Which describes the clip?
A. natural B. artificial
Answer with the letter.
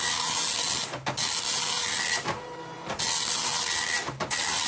A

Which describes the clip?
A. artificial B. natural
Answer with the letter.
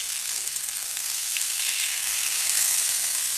A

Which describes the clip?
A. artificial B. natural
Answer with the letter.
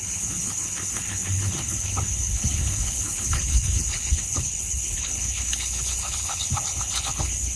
A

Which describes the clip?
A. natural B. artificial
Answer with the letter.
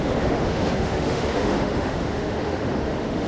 B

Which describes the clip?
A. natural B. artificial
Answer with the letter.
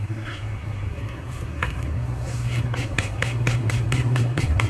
B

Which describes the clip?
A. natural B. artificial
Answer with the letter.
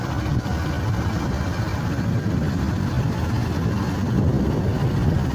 A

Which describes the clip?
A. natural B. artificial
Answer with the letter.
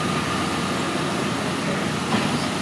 A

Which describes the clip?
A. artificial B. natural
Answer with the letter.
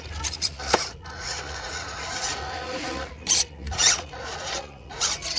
A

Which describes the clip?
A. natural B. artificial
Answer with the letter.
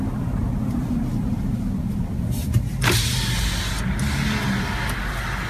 A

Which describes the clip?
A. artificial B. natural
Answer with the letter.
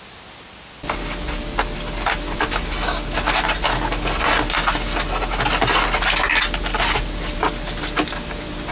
B